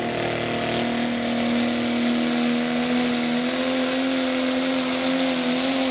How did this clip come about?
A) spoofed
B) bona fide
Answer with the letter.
B